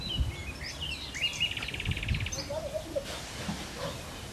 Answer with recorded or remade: recorded